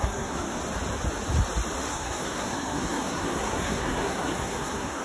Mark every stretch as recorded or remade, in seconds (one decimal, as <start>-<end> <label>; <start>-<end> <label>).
0.0-0.6 remade; 0.6-1.9 recorded; 1.9-5.0 remade